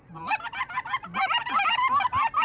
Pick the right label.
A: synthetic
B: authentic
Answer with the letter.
B